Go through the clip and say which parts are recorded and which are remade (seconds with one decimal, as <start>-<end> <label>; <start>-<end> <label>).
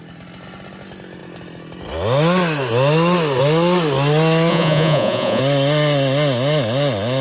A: 0.0-4.5 recorded; 4.5-5.4 remade; 5.4-7.2 recorded